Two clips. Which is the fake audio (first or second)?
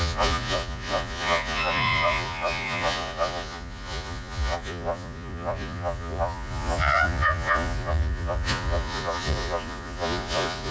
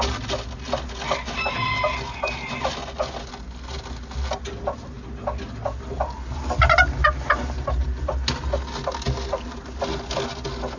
first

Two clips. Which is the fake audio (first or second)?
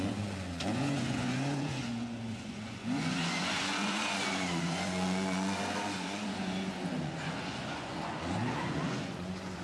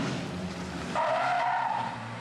first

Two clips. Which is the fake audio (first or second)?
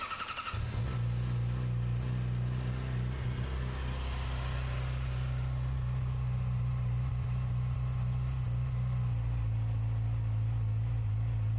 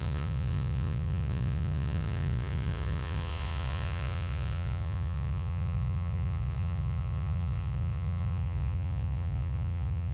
second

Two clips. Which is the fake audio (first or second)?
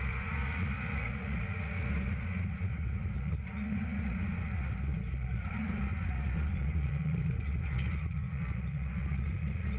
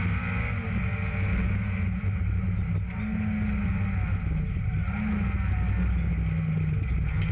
first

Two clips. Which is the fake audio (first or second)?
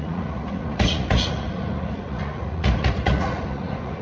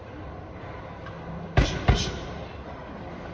first